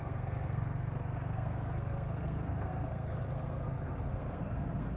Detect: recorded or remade remade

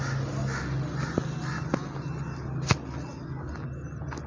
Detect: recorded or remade recorded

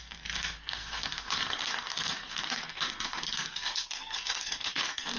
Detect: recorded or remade remade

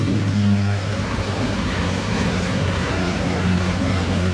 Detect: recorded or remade remade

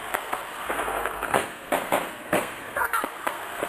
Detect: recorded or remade remade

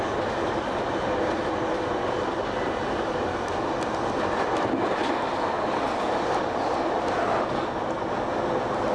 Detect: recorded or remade recorded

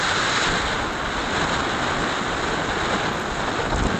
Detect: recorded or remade recorded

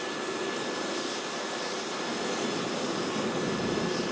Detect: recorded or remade recorded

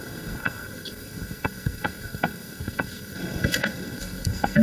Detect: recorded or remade remade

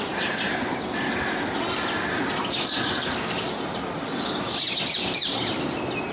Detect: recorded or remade recorded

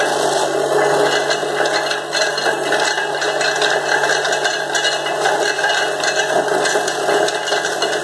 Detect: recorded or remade recorded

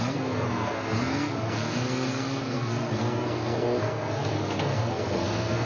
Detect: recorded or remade remade